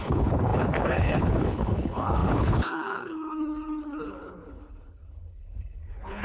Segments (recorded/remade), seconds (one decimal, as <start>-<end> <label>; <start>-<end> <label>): 0.0-6.2 remade